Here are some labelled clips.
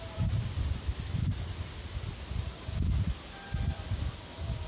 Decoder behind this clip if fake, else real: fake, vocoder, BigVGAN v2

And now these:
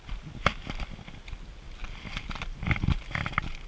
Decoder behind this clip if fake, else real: real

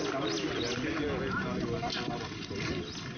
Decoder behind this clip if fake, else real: real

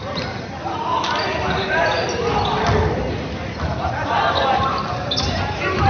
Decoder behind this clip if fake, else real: real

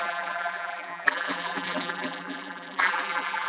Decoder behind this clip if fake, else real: fake, vocoder, BigVGAN v2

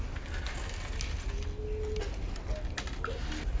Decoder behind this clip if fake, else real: real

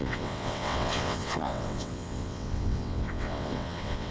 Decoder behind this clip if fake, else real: fake, vocoder, WaveNeXt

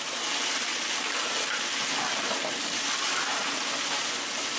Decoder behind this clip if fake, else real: real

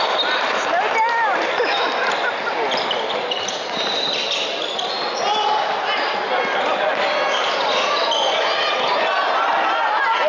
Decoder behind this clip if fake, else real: real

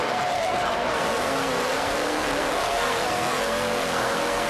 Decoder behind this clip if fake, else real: fake, codec, SNAC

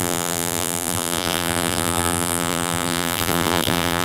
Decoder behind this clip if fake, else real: fake, vocoder, BigVGAN v2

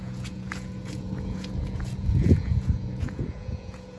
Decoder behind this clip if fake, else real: fake, vocoder, Vocos